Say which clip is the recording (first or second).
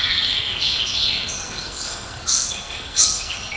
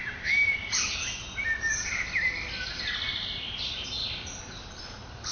second